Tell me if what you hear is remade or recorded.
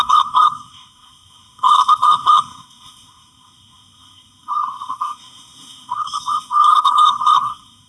remade